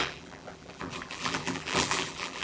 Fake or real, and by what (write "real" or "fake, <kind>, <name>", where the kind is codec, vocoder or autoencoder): fake, vocoder, BigVGAN v2